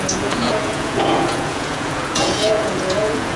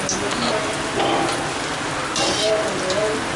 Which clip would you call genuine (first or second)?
second